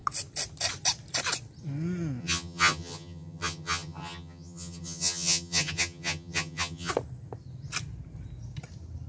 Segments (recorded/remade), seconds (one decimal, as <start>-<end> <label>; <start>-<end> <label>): 0.0-2.2 recorded; 2.2-6.9 remade; 6.9-9.1 recorded